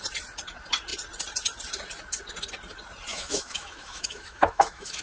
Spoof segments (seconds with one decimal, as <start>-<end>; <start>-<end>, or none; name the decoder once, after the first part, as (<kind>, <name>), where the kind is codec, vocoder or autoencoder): 3.1-5.0 (autoencoder, DAC-VAE)